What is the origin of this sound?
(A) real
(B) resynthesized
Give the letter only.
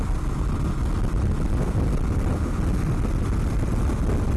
A